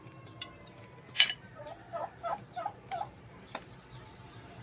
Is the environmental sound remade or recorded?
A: remade